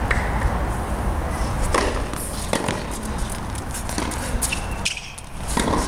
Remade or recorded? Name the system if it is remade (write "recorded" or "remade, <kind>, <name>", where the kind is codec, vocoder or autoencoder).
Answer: recorded